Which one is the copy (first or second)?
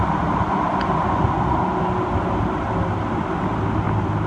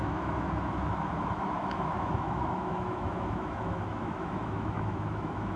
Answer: second